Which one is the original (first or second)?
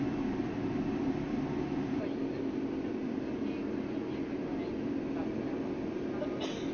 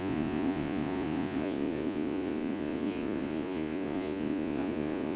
first